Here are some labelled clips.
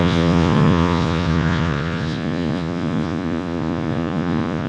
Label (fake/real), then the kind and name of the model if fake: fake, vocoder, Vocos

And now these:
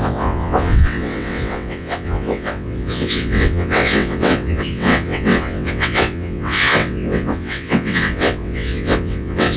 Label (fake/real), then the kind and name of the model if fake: fake, vocoder, WaveNeXt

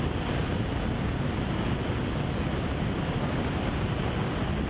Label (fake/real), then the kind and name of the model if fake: real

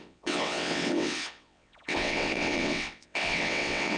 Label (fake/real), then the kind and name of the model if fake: fake, vocoder, WaveNeXt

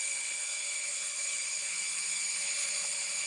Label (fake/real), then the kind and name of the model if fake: fake, codec, HILCodec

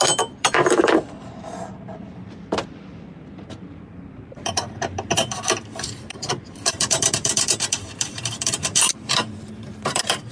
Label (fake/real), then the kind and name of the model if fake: fake, vocoder, BigVGAN v2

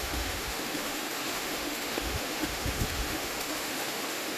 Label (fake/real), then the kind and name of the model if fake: fake, autoencoder, DAC-VAE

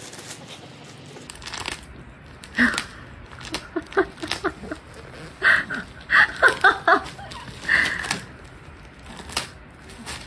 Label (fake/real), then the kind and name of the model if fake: real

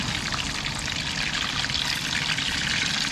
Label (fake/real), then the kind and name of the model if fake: real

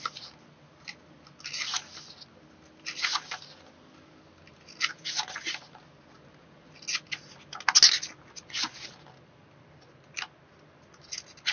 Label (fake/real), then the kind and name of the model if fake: real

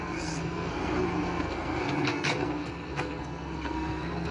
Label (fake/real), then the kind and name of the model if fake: fake, codec, SNAC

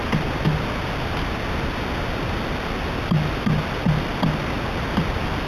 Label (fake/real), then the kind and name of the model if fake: real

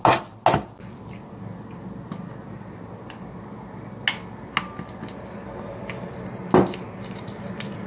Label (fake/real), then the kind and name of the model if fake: real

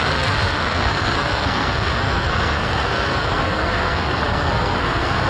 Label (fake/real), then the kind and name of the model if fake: fake, codec, SNAC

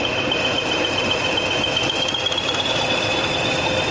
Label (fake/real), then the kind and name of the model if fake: real